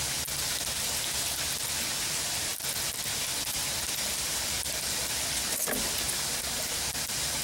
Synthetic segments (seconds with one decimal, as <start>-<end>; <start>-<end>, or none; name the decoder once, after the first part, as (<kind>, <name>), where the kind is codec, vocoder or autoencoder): none